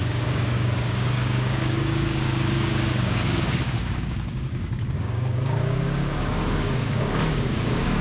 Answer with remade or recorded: remade